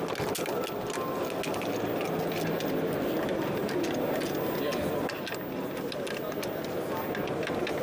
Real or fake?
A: real